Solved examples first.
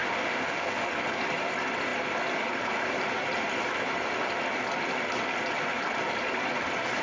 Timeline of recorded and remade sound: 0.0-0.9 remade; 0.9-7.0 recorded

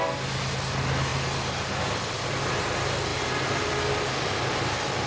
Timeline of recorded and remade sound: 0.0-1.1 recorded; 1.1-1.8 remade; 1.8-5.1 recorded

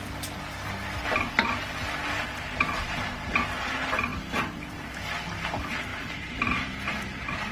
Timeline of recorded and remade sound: 0.0-2.5 recorded; 2.5-3.1 remade; 3.1-5.9 recorded; 5.9-7.5 remade